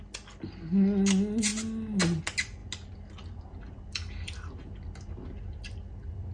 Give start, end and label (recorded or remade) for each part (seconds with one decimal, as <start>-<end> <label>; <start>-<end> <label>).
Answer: 0.0-6.3 recorded